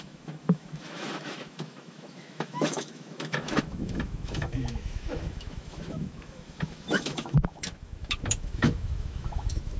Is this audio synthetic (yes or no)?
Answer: yes